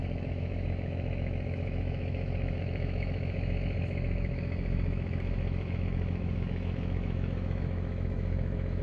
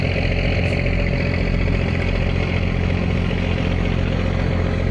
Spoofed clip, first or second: first